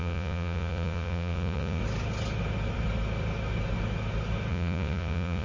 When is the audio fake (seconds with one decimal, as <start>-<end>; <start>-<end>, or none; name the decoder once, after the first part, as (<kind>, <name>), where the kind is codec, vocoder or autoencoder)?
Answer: 0.0-1.8 (vocoder, Vocos); 4.5-5.4